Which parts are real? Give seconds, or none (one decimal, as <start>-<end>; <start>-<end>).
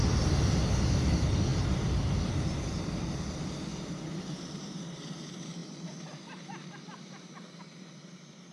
0.0-8.5